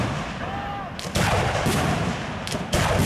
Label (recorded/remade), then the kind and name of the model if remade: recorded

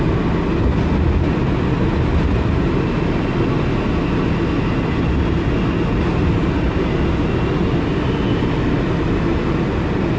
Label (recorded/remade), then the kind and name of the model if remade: recorded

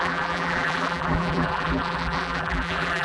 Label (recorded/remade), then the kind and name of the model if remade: remade, vocoder, BigVGAN v2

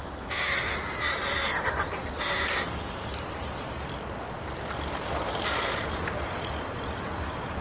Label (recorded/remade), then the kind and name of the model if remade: recorded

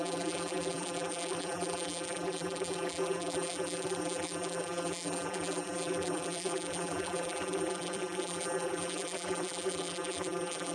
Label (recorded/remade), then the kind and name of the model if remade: remade, vocoder, BigVGAN v2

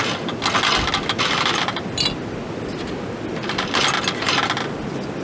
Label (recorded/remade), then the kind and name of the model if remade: recorded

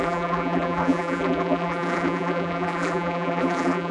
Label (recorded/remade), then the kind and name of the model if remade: remade, vocoder, BigVGAN v2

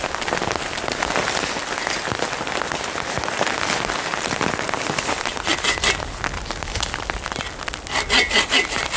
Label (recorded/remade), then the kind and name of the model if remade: recorded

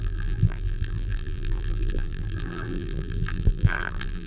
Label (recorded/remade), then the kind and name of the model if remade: remade, vocoder, BigVGAN v2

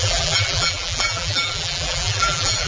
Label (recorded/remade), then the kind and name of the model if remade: remade, vocoder, BigVGAN v2